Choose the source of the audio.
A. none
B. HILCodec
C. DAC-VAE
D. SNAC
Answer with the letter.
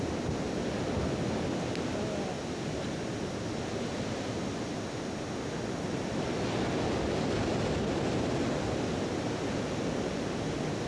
A